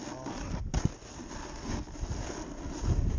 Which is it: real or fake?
real